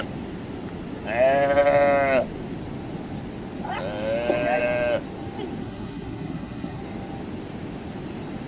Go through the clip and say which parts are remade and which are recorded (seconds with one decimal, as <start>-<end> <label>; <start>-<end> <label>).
0.0-5.6 recorded; 5.6-6.8 remade; 6.8-8.5 recorded